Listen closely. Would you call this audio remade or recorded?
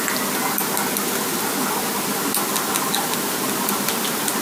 recorded